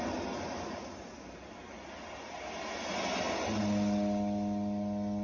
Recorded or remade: recorded